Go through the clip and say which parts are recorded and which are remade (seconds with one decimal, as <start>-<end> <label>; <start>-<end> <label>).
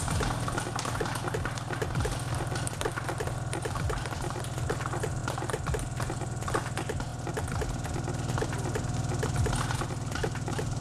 0.0-5.2 recorded; 5.2-5.7 remade; 5.7-10.8 recorded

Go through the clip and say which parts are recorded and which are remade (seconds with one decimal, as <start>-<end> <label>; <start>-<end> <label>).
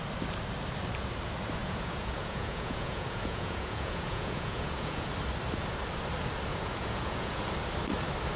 0.0-1.6 recorded; 1.6-5.1 remade; 5.1-6.5 recorded; 6.5-7.4 remade; 7.4-8.4 recorded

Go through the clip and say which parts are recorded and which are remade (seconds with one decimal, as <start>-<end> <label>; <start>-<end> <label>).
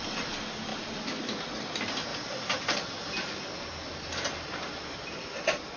0.0-0.7 recorded; 0.7-1.5 remade; 1.5-5.8 recorded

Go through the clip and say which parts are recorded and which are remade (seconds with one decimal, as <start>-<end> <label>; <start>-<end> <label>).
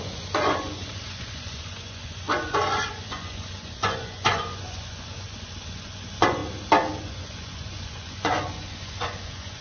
0.0-6.4 remade; 6.4-7.0 recorded; 7.0-9.6 remade